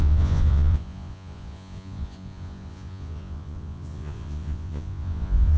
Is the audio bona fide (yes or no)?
no